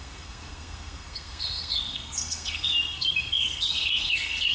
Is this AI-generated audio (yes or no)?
yes